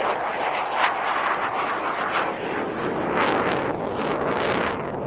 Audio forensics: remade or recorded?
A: recorded